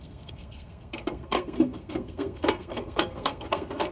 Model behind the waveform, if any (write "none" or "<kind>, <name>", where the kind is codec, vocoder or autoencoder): codec, SNAC